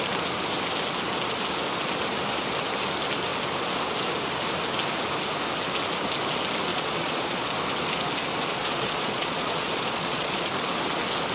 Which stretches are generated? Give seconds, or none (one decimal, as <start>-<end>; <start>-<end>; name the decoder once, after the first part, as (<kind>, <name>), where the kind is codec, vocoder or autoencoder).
6.7-7.5 (vocoder, Vocos); 8.6-10.5